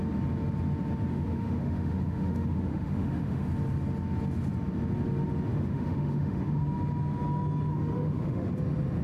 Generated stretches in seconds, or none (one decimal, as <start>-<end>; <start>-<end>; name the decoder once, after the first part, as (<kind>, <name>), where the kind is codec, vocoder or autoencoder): 1.1-3.5 (autoencoder, DAC-VAE); 5.5-6.6; 7.7-8.5